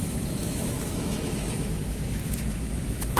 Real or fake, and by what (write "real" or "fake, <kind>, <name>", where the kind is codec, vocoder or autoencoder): fake, autoencoder, DAC-VAE